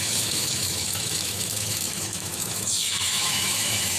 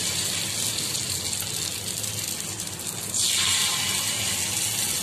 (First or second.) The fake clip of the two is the first